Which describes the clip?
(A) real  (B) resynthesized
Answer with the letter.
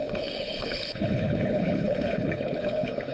B